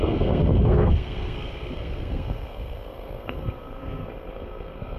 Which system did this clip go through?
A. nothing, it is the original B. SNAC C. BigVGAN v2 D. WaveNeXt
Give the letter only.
B